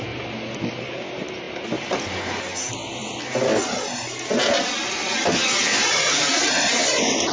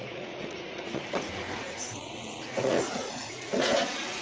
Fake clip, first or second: second